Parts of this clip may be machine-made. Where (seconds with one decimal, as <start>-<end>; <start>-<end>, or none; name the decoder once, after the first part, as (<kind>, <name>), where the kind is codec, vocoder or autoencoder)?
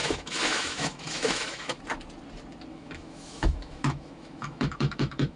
0.0-1.8 (autoencoder, DAC-VAE); 2.7-5.4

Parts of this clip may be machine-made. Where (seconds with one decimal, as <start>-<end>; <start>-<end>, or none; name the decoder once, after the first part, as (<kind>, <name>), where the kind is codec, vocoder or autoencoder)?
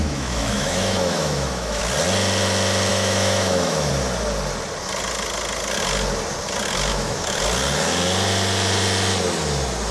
0.0-1.8 (autoencoder, DAC-VAE); 2.9-3.9; 6.9-7.4